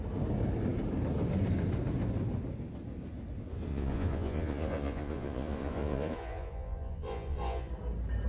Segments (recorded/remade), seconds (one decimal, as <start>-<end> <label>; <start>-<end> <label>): 0.0-3.7 recorded; 3.7-7.7 remade; 7.7-8.3 recorded